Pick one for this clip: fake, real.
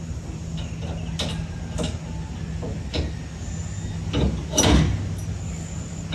real